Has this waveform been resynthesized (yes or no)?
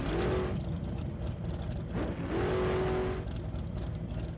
no